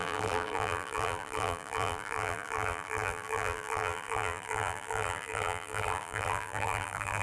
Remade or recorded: remade